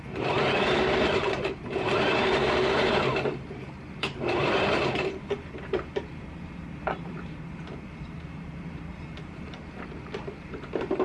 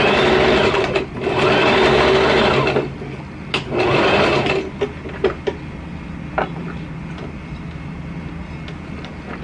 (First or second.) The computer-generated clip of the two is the first